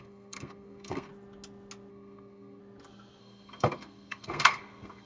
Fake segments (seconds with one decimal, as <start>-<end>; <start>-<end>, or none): 0.0-1.1; 1.9-2.6; 3.2-5.1